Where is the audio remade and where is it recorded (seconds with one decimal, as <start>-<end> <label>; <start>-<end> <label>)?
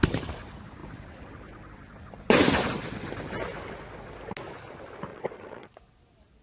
0.0-5.1 recorded; 5.1-5.8 remade; 5.8-6.4 recorded